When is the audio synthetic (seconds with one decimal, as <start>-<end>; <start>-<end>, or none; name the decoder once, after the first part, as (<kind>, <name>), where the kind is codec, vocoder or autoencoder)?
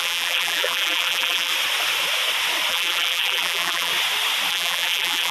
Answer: 0.0-1.5 (vocoder, BigVGAN v2); 2.7-3.9; 4.5-5.3